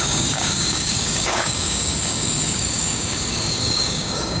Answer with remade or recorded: remade